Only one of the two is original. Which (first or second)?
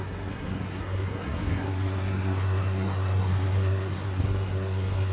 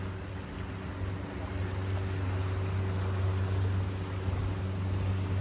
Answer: second